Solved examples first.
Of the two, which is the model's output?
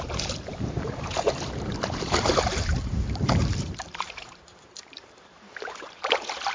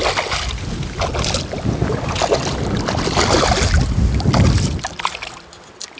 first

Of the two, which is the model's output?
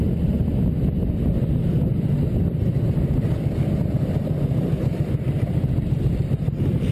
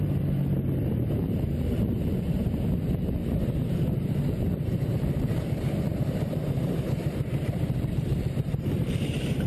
second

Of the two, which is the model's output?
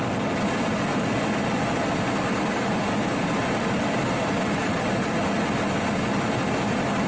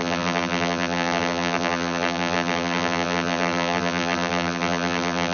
second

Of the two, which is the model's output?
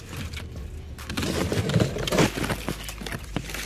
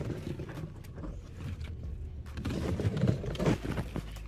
second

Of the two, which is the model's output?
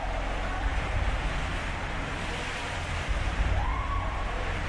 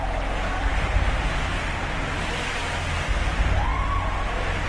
first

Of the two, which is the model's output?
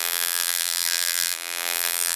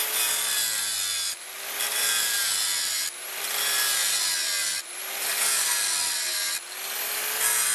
first